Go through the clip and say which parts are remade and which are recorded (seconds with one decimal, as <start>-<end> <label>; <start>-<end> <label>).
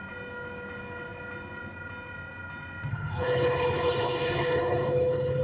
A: 0.0-2.9 recorded; 2.9-5.4 remade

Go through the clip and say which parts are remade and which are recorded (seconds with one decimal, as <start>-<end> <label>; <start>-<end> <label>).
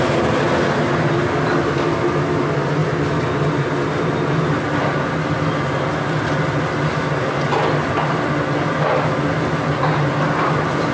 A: 0.0-10.9 recorded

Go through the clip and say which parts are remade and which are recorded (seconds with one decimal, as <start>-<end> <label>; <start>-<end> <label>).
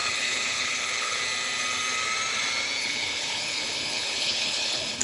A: 0.0-1.2 remade; 1.2-2.8 recorded; 2.8-5.0 remade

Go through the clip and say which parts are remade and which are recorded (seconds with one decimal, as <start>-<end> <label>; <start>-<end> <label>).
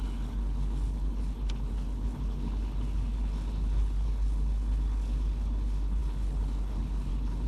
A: 0.0-7.5 remade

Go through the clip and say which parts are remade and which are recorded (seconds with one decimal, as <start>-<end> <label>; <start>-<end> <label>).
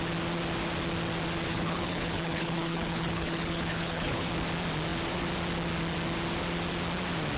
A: 0.0-1.5 recorded; 1.5-4.3 remade; 4.3-7.4 recorded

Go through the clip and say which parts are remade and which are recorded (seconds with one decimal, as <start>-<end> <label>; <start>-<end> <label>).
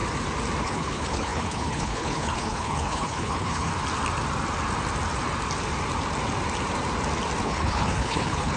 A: 0.0-0.6 recorded; 0.6-3.7 remade; 3.7-7.4 recorded; 7.4-8.6 remade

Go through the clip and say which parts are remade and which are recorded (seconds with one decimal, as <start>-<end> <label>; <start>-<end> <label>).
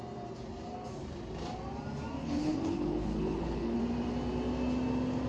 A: 0.0-2.2 recorded; 2.2-3.8 remade; 3.8-5.3 recorded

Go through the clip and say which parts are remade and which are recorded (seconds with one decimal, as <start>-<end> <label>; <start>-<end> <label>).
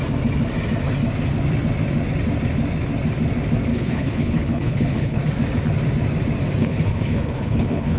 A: 0.0-3.7 recorded; 3.7-5.2 remade; 5.2-6.6 recorded; 6.6-8.0 remade